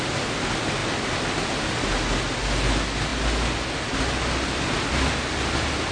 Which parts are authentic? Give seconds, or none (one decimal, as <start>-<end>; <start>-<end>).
0.0-5.9

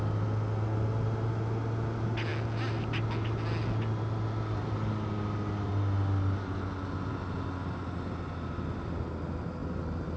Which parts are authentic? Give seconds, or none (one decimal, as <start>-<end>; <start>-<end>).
0.0-10.2

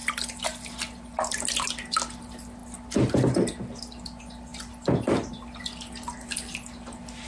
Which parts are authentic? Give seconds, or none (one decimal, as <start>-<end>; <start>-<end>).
0.0-7.3

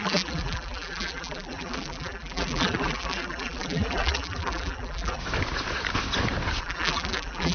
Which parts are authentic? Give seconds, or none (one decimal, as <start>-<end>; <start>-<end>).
5.2-6.6

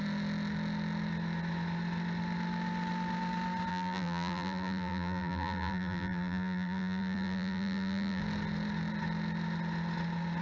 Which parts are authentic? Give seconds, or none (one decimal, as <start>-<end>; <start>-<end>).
0.0-3.7; 8.2-10.4

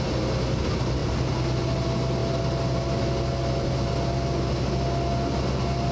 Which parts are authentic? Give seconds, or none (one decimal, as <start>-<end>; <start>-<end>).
0.0-5.9